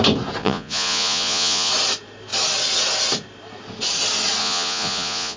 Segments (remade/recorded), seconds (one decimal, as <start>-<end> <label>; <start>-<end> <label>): 0.0-0.4 recorded; 0.4-1.7 remade; 1.7-4.4 recorded; 4.4-5.4 remade